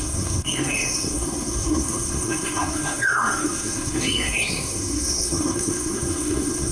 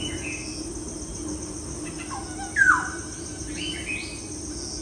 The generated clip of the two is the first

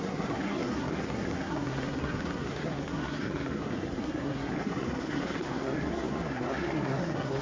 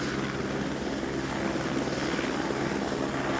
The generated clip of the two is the first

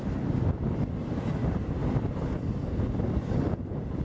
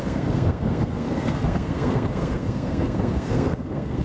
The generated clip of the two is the second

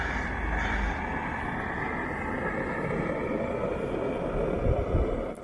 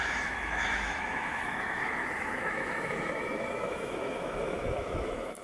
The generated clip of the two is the second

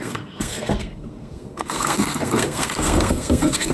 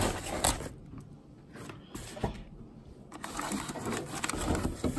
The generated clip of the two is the first